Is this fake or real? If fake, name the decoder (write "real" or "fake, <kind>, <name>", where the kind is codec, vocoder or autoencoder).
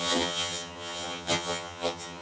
fake, vocoder, HiFi-GAN